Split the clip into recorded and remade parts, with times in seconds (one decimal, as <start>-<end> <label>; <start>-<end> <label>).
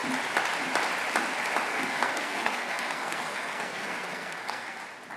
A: 0.0-1.7 recorded; 1.7-4.8 remade; 4.8-5.2 recorded